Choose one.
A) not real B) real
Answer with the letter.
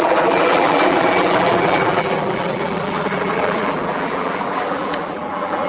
A